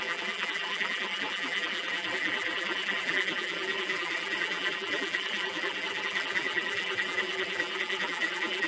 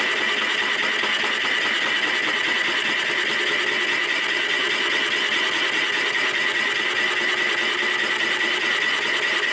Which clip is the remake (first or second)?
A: first